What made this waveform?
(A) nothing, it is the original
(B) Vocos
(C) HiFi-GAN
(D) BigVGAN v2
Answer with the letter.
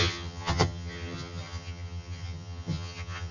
C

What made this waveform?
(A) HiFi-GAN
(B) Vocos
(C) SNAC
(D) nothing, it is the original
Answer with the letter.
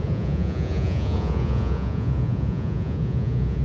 B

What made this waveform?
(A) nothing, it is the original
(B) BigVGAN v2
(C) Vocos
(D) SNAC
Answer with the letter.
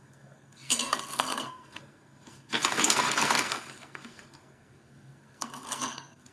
D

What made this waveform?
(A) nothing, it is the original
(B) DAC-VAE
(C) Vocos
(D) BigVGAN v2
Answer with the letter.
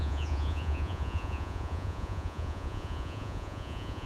C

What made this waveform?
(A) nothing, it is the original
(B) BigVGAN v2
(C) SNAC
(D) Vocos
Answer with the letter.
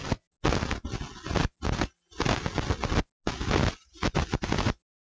A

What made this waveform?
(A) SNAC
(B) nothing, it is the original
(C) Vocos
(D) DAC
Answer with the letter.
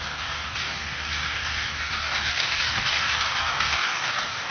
D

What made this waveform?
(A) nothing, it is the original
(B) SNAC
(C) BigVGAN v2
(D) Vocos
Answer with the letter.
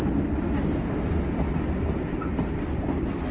A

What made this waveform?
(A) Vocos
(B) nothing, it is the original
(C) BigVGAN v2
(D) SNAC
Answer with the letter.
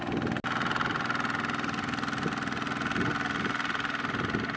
B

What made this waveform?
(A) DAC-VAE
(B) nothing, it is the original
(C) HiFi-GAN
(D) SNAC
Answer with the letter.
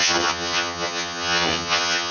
C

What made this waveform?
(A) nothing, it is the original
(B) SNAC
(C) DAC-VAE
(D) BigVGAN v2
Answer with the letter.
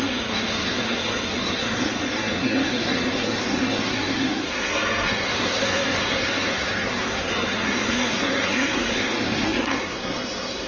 B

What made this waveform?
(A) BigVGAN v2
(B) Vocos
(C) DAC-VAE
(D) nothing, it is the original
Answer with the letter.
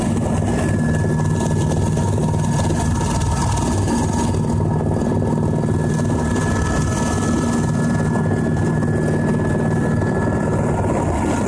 D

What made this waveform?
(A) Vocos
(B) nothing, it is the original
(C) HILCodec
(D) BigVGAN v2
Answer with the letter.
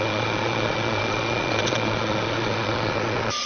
A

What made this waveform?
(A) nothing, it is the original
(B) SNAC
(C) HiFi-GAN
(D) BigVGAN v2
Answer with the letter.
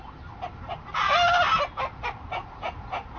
A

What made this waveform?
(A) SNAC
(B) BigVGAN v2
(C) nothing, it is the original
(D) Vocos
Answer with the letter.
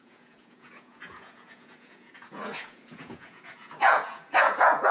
D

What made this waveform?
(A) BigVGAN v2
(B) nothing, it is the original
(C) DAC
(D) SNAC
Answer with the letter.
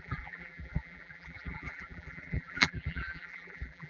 A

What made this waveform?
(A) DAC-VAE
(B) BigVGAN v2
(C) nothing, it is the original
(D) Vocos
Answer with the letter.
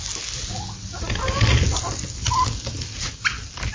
C